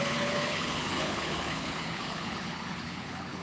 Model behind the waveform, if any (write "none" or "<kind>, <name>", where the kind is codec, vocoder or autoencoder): codec, HILCodec